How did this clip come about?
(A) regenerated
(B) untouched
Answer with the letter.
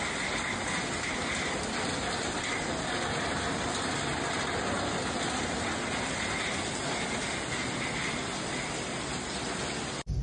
B